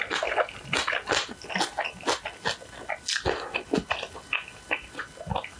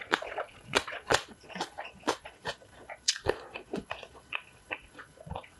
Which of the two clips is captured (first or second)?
first